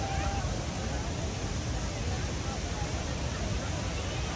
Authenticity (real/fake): real